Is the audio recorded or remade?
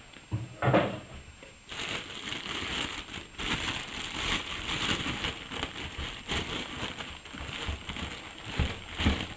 recorded